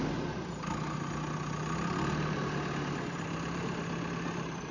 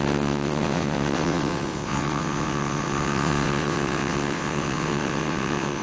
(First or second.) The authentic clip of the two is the first